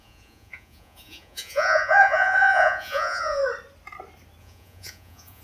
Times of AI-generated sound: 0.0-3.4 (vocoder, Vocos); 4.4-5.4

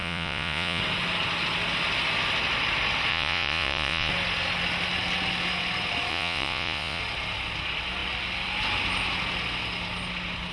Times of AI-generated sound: 0.0-0.8 (vocoder, Vocos); 3.1-4.1; 6.1-7.0

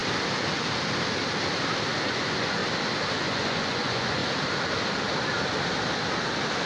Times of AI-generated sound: 2.1-2.6 (vocoder, Vocos); 3.1-4.2

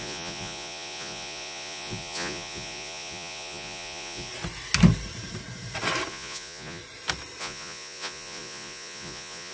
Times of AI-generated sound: 0.0-4.3 (vocoder, Vocos); 6.1-6.8; 7.4-9.5